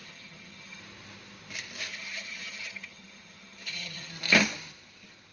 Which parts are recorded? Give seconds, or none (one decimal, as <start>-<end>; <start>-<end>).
0.8-1.9; 4.1-5.3